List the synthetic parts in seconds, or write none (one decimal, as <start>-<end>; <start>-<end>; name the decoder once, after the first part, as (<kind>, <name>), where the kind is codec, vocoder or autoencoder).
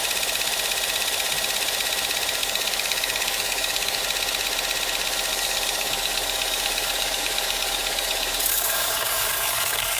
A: 2.4-4.0 (codec, DAC); 5.3-10.0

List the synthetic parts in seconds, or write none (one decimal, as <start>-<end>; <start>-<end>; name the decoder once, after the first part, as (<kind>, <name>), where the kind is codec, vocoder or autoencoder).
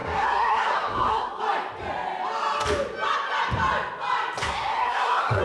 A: 0.0-1.4 (codec, SNAC); 4.4-5.4